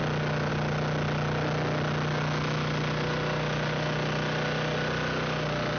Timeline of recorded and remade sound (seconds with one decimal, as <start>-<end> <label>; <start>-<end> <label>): 0.0-5.8 recorded